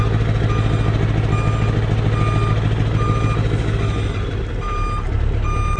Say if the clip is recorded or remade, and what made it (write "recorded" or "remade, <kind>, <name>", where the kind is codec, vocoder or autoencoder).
recorded